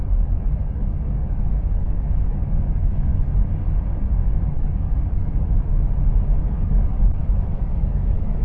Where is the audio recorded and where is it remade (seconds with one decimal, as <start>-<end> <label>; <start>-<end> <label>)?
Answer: 0.0-3.1 remade; 3.1-4.0 recorded; 4.0-5.7 remade; 5.7-6.4 recorded; 6.4-8.4 remade

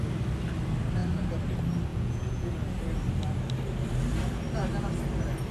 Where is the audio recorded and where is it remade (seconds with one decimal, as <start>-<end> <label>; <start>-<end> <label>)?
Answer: 0.0-1.9 recorded; 1.9-2.5 remade; 2.5-5.5 recorded

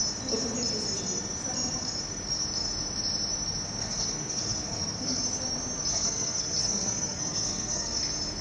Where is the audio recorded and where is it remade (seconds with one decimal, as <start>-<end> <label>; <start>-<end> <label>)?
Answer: 0.0-3.8 recorded; 3.8-5.2 remade; 5.2-5.9 recorded; 5.9-8.0 remade; 8.0-8.4 recorded

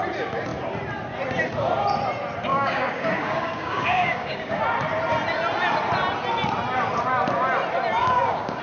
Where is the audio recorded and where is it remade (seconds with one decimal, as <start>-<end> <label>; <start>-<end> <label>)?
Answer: 0.0-2.5 recorded; 2.5-4.6 remade; 4.6-8.0 recorded; 8.0-8.6 remade

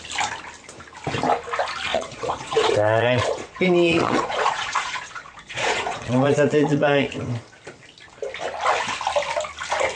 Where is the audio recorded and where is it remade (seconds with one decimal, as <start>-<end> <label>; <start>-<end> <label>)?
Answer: 0.0-1.9 recorded; 1.9-7.1 remade; 7.1-10.0 recorded